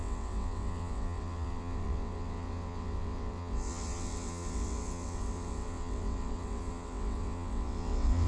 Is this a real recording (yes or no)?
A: no